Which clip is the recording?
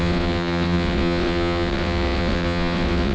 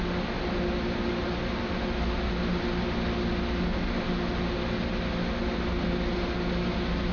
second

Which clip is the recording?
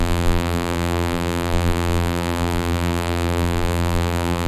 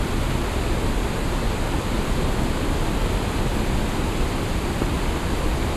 second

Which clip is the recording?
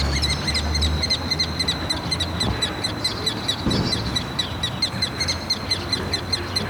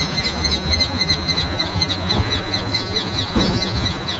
first